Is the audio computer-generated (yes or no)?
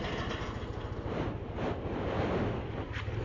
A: no